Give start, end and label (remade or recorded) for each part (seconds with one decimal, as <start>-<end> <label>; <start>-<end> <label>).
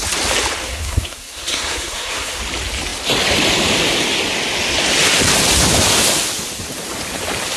0.0-0.6 recorded; 0.6-2.4 remade; 2.4-7.6 recorded